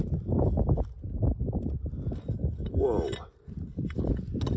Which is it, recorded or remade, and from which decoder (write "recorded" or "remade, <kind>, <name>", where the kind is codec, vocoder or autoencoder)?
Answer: recorded